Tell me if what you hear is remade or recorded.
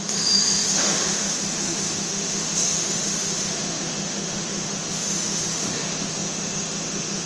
remade